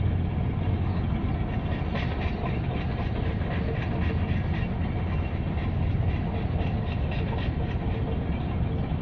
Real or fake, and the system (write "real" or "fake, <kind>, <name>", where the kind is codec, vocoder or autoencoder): real